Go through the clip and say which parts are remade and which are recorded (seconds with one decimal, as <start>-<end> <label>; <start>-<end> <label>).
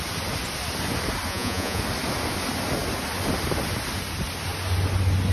0.0-1.3 recorded; 1.3-1.8 remade; 1.8-5.3 recorded